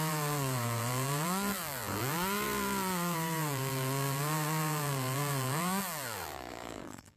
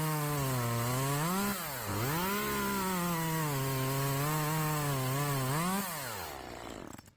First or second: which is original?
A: second